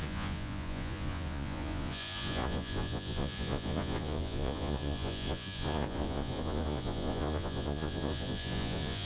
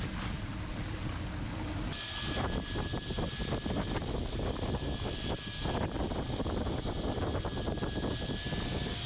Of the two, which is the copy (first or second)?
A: first